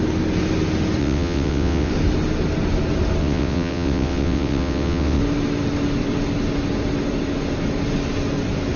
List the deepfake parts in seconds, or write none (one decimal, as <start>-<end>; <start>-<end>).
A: 1.0-1.9; 3.2-5.2